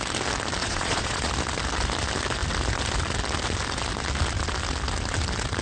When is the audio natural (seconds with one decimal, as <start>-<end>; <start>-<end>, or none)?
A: 0.0-0.6; 1.3-5.6